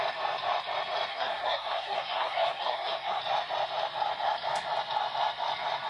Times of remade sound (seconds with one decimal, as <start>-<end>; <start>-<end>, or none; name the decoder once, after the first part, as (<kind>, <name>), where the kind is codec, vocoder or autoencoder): 1.1-3.2 (codec, SNAC)